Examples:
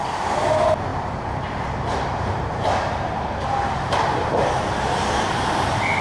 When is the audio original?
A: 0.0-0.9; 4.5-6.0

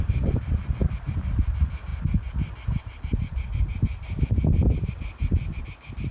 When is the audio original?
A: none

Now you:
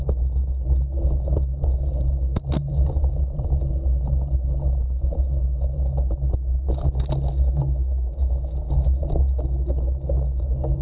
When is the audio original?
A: 0.0-2.6; 3.6-10.8